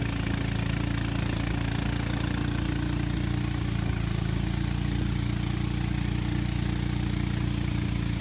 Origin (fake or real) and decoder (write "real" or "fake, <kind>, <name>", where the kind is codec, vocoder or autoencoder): real